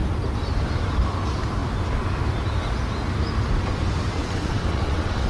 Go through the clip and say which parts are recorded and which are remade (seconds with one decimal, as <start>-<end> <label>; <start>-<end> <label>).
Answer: 0.0-4.2 recorded; 4.2-5.3 remade